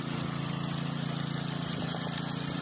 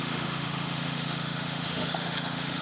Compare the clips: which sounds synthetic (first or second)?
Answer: second